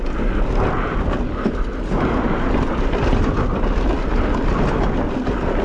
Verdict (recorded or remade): recorded